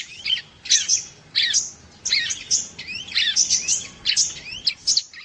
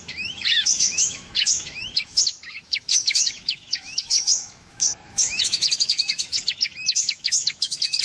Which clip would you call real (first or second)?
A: first